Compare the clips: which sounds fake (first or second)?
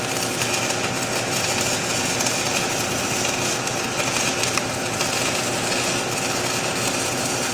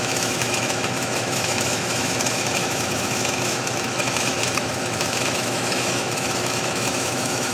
second